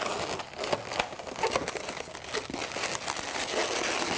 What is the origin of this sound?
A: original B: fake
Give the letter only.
A